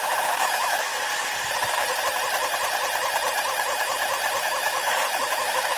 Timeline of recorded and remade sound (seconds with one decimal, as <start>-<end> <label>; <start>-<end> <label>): 0.0-0.9 remade; 0.9-4.4 recorded; 4.4-5.8 remade